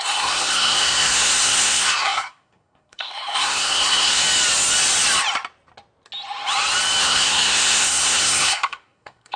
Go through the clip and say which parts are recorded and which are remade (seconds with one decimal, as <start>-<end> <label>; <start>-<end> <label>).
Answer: 0.0-4.2 remade; 4.2-7.0 recorded; 7.0-9.4 remade